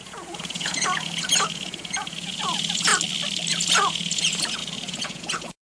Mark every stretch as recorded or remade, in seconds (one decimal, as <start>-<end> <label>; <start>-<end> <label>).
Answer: 0.0-2.9 remade; 2.9-3.5 recorded; 3.5-5.7 remade